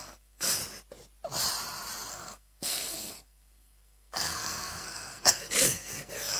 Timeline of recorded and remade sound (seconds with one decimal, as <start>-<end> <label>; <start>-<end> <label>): 0.0-0.6 remade; 0.6-2.1 recorded; 2.1-6.4 remade